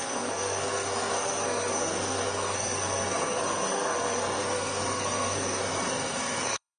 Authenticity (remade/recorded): remade